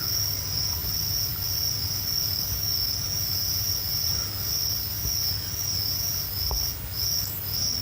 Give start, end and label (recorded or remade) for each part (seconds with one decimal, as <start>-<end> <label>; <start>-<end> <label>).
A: 0.0-7.8 recorded